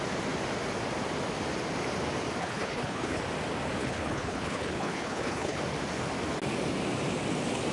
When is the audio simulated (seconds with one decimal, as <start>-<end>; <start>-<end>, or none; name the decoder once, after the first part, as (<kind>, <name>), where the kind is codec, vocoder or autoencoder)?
2.4-3.2 (codec, HILCodec); 3.8-5.6